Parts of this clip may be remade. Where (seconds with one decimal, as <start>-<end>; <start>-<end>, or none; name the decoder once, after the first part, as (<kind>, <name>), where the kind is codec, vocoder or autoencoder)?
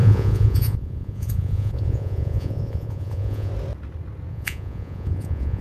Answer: 0.0-3.5 (vocoder, Vocos); 4.3-5.6